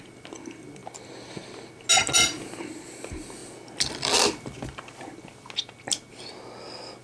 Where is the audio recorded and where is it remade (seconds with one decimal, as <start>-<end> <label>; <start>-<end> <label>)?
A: 0.0-7.0 recorded